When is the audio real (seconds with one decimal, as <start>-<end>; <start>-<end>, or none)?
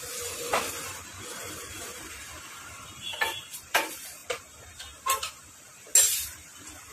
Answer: 0.0-6.9